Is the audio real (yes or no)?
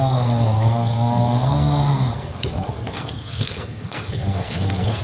no